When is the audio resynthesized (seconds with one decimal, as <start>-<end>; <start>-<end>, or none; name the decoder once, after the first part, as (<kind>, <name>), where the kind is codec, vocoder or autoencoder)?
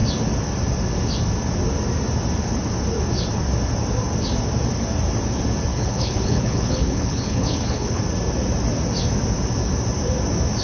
5.7-8.0 (codec, HILCodec)